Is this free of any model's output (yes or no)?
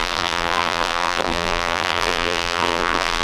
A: no